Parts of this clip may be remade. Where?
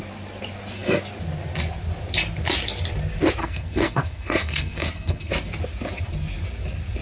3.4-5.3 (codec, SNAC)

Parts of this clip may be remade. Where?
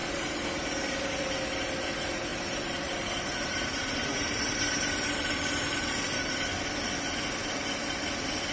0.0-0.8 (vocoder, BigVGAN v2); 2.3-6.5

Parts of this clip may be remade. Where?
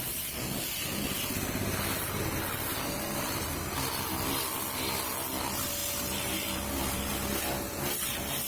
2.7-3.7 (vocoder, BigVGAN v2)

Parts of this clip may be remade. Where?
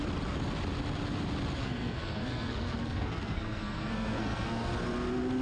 1.6-4.8 (codec, SNAC)